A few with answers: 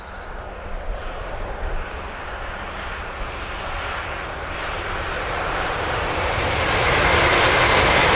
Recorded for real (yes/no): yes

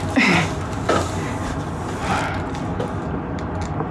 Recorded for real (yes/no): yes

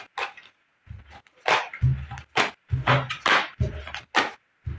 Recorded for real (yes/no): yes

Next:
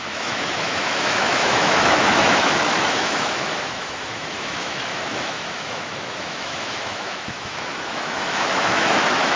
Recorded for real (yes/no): no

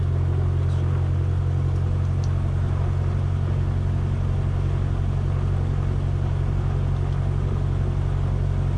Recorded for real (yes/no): yes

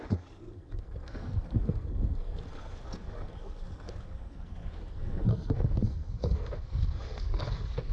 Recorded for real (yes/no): no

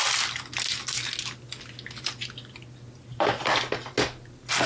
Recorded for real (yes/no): yes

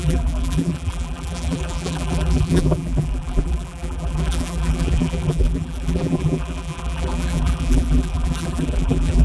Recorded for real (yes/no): no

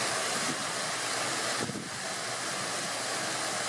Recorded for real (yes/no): yes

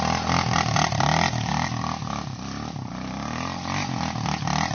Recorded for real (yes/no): yes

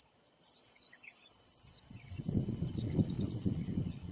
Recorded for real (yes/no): no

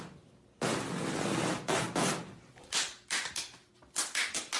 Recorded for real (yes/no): yes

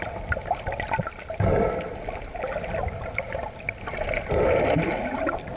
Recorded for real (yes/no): yes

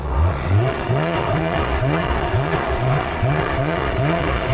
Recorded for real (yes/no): no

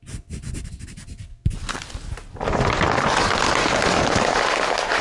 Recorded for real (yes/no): yes